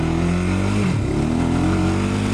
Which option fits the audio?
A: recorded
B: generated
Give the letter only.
A